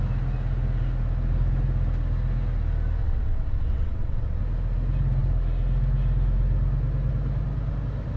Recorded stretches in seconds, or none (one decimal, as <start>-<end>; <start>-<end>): 0.0-3.0; 4.4-8.2